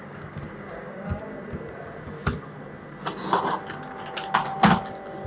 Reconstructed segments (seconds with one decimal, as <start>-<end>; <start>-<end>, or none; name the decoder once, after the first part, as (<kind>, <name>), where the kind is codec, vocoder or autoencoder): 0.0-1.2 (codec, DAC)